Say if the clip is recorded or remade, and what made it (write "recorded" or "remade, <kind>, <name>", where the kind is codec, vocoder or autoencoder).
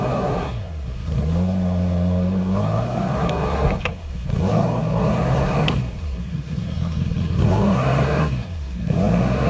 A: remade, codec, SNAC